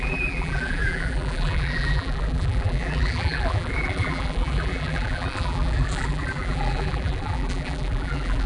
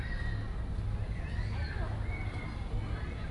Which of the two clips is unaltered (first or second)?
second